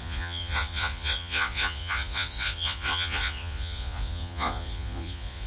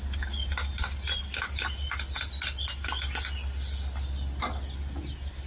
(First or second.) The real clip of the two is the second